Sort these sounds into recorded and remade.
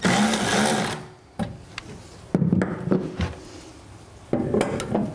recorded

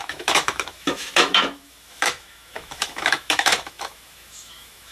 remade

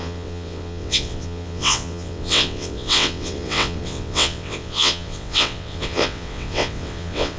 remade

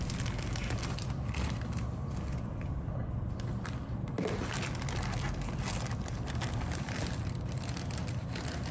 recorded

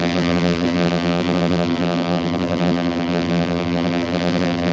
remade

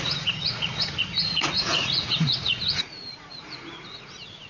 remade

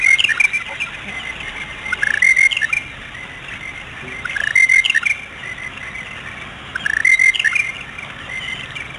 recorded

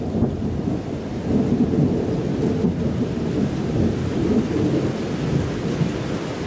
recorded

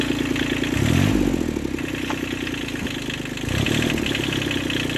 recorded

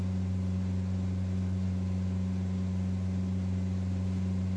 recorded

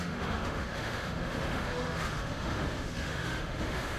remade